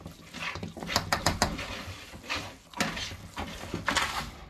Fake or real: real